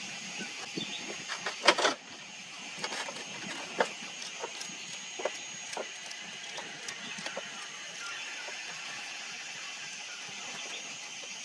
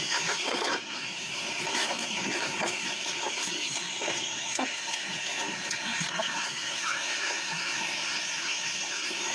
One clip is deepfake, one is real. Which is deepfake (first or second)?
second